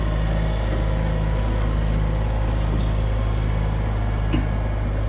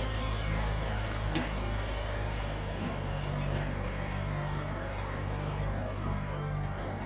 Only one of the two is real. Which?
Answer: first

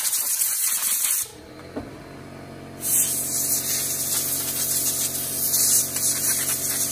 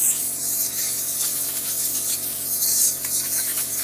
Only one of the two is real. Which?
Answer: first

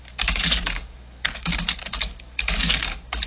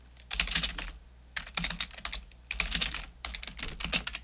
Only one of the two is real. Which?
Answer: second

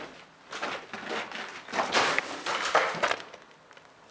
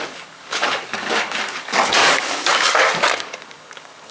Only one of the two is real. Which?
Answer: first